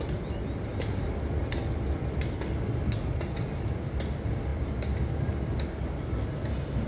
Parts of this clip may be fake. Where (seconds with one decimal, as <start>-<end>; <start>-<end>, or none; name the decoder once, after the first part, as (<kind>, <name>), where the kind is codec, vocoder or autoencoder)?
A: none